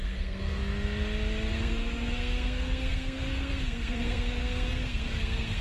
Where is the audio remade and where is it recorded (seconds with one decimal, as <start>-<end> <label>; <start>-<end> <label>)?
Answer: 0.0-0.6 remade; 0.6-1.5 recorded; 1.5-5.6 remade